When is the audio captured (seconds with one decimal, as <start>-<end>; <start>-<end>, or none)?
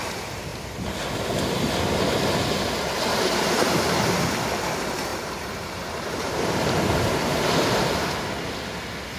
0.0-3.1; 4.2-5.1; 8.5-9.2